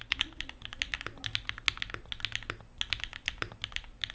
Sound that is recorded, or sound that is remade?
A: recorded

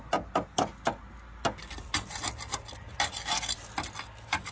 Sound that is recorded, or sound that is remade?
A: recorded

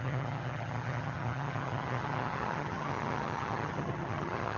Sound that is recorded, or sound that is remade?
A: remade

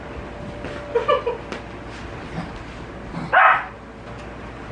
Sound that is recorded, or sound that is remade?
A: recorded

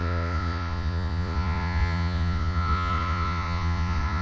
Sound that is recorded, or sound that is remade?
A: remade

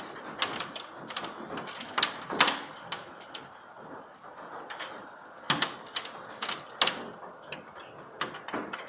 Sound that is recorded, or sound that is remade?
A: recorded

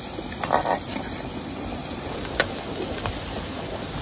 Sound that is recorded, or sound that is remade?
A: recorded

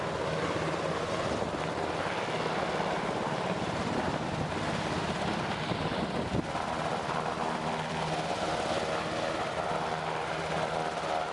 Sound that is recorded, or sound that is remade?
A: recorded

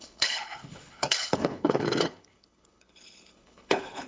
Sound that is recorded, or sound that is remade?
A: remade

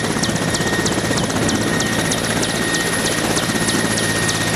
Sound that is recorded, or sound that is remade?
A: recorded